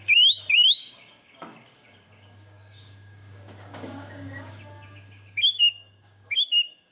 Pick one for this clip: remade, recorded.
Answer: remade